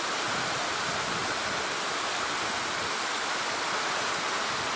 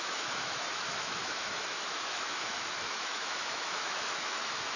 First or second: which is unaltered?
first